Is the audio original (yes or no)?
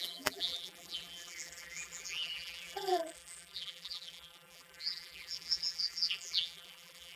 no